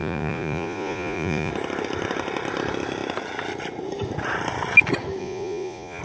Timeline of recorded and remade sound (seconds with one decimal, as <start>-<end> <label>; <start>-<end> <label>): 0.0-1.5 remade; 1.5-5.2 recorded; 5.2-6.0 remade